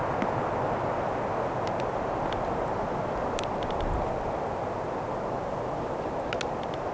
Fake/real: real